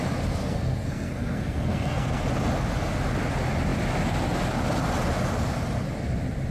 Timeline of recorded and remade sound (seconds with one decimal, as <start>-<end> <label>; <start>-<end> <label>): 0.0-0.4 recorded; 0.4-2.2 remade; 2.2-6.5 recorded